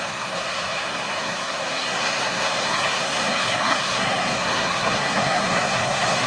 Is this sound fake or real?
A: fake